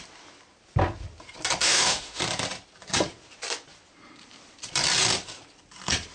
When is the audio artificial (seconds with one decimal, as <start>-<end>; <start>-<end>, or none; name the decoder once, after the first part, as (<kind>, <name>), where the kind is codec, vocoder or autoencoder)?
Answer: 1.6-2.2 (autoencoder, DAC-VAE)